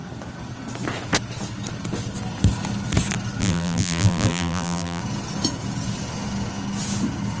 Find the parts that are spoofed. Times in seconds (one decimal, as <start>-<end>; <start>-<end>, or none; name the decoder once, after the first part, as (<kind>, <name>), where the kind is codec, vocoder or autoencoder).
3.4-5.0 (vocoder, BigVGAN v2)